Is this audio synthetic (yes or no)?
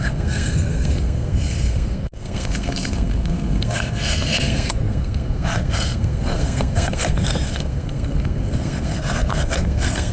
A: yes